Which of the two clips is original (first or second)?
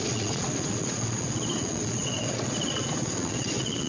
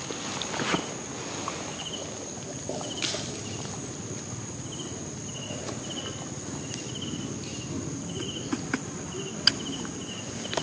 second